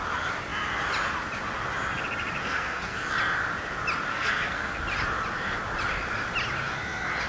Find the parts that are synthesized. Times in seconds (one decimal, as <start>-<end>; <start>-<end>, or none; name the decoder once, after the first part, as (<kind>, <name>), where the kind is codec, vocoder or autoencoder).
2.4-3.1 (codec, SNAC); 4.1-4.8